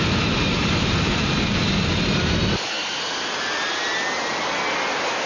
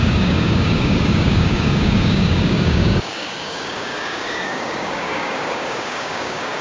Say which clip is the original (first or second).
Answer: first